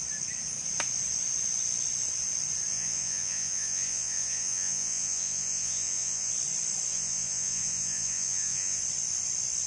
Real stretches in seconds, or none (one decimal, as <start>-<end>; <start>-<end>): 0.0-2.7; 6.3-6.9; 8.8-9.7